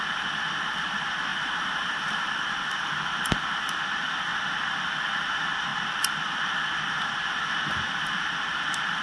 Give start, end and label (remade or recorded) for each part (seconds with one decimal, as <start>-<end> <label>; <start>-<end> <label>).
0.0-1.3 recorded; 1.3-2.2 remade; 2.2-9.0 recorded